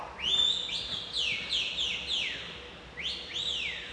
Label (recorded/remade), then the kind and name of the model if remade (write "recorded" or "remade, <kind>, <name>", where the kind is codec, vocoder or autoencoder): recorded